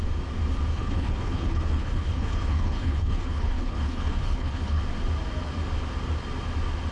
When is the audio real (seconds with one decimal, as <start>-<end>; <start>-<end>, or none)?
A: 0.0-0.7; 4.8-6.9